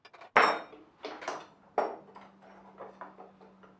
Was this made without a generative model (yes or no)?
yes